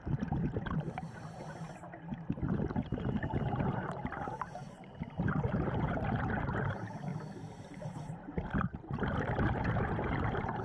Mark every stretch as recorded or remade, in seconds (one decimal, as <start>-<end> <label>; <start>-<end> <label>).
0.0-10.6 remade